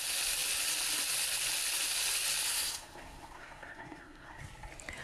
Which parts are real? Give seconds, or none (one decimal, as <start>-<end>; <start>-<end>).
0.0-2.5; 4.4-5.0